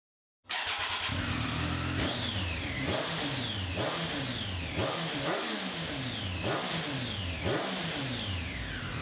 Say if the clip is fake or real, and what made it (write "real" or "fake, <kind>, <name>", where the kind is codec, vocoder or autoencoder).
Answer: real